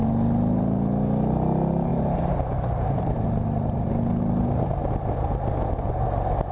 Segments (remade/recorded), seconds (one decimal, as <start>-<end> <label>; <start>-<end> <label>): 0.0-1.9 recorded; 1.9-3.9 remade; 3.9-6.5 recorded